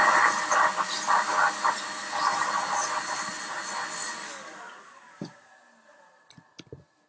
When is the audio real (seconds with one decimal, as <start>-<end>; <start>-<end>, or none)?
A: 0.0-4.2; 5.5-7.1